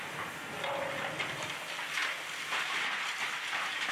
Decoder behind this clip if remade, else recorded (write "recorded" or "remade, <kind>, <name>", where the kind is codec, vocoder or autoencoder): recorded